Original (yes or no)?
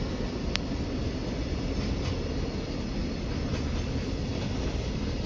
yes